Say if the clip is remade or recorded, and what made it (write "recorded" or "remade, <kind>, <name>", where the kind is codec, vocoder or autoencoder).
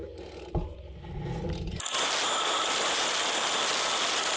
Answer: recorded